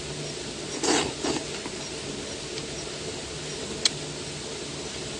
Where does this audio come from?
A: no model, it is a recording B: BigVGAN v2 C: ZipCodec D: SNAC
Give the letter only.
A